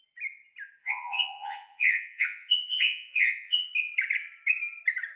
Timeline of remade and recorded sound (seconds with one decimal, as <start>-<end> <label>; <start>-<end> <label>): 0.0-0.8 recorded; 0.8-3.7 remade; 3.7-5.2 recorded